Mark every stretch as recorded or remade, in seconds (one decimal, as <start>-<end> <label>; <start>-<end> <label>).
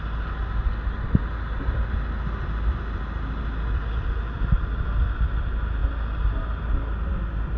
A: 0.0-7.6 recorded